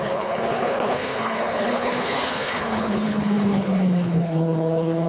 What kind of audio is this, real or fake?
fake